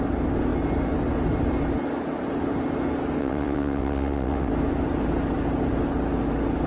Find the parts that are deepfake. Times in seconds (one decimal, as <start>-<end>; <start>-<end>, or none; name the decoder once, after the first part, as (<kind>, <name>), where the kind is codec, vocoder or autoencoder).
3.2-4.5 (vocoder, WaveNeXt)